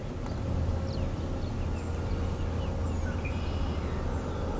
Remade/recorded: recorded